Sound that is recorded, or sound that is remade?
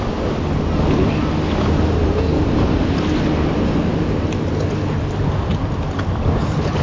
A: recorded